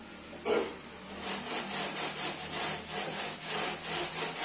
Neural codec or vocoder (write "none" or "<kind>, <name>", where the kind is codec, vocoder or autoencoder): none